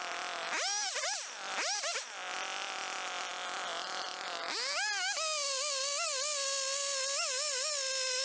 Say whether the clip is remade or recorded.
recorded